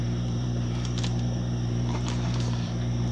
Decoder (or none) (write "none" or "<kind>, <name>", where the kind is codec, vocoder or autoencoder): vocoder, BigVGAN v2